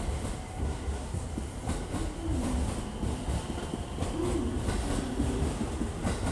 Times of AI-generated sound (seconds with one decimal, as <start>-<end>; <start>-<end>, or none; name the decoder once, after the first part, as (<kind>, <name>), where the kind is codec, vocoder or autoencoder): 0.6-1.3 (codec, SNAC)